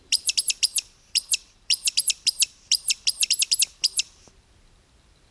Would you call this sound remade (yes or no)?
yes